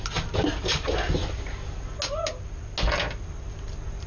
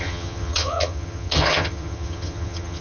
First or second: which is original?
first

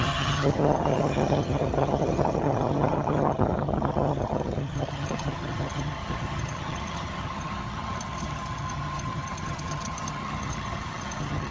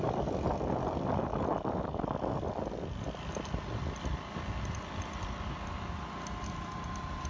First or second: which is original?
second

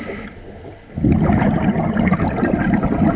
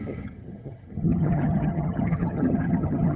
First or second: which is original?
first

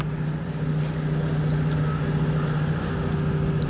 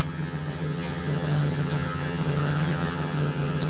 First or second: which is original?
first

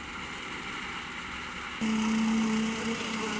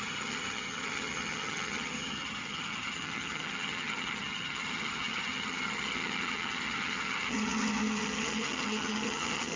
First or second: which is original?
first